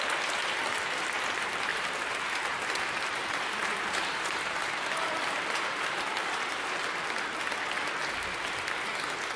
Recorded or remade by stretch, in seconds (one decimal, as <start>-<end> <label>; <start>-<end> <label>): 0.0-1.7 recorded; 1.7-6.8 remade; 6.8-9.4 recorded